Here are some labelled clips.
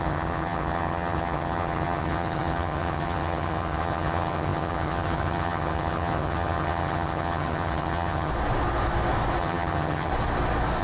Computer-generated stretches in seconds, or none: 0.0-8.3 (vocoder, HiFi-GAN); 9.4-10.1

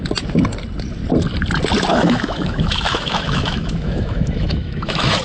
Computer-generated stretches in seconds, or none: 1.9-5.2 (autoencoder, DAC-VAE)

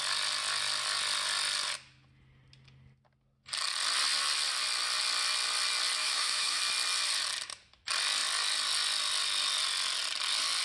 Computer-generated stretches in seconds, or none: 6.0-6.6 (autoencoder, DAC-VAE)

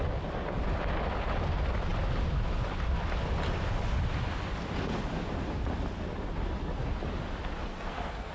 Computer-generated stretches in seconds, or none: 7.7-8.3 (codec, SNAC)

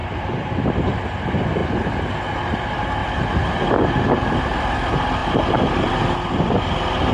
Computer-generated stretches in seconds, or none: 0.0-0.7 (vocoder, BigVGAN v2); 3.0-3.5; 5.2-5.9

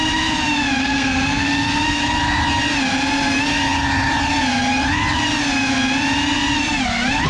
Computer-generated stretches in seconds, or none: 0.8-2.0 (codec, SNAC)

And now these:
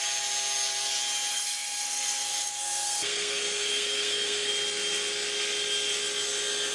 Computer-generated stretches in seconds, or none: 1.3-4.5 (codec, SNAC)